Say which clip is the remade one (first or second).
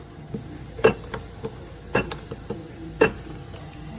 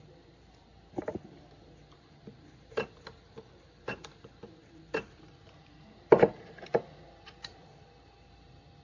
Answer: second